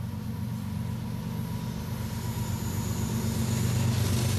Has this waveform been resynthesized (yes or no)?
no